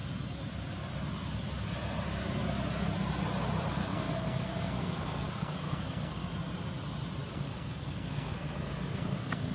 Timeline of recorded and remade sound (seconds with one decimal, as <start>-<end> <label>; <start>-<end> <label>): 0.0-3.7 recorded; 3.7-6.3 remade; 6.3-7.3 recorded; 7.3-9.5 remade